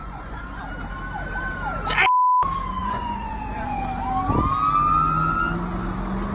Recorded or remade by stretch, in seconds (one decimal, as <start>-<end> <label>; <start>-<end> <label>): 0.0-0.6 remade; 0.6-2.8 recorded; 2.8-3.8 remade; 3.8-6.3 recorded